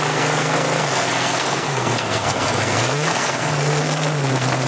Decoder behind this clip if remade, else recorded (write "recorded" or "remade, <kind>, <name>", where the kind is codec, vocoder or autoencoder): remade, codec, SNAC